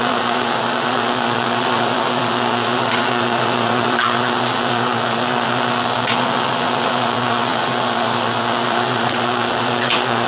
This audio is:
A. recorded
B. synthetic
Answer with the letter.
B